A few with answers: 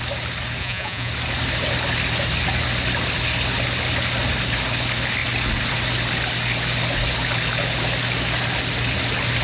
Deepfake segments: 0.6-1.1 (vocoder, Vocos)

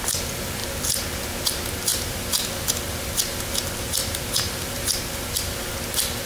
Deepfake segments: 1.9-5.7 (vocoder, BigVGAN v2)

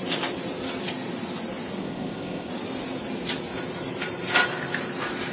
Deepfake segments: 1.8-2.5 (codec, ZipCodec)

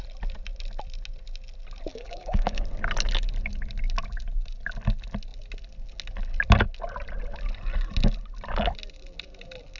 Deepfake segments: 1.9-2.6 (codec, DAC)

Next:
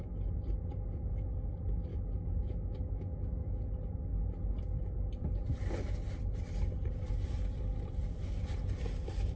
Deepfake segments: 1.9-3.6 (autoencoder, DAC-VAE)